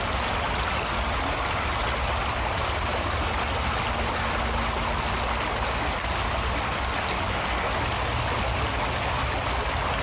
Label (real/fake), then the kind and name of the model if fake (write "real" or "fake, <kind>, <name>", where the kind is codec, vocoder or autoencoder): real